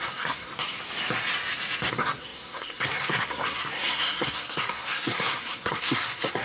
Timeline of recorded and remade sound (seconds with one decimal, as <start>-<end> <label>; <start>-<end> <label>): 0.0-0.5 remade; 0.5-1.9 recorded; 1.9-6.4 remade